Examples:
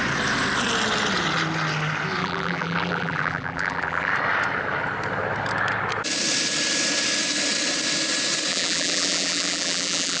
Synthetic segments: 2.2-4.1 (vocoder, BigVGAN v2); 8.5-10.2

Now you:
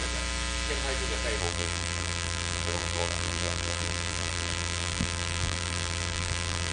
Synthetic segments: 1.4-6.7 (vocoder, BigVGAN v2)

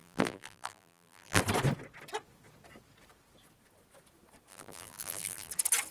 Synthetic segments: 0.0-1.4 (vocoder, BigVGAN v2); 4.5-5.5

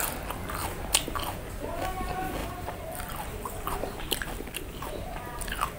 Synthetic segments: 2.4-5.8 (vocoder, BigVGAN v2)

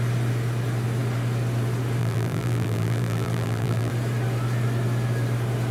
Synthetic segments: 2.0-3.9 (vocoder, BigVGAN v2)

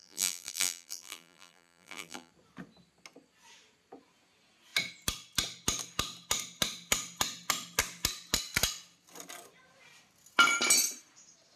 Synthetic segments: 0.0-2.3 (vocoder, BigVGAN v2)

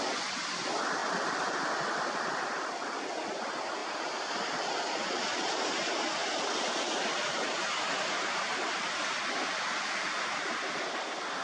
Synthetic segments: 1.0-2.7 (vocoder, BigVGAN v2); 3.8-5.2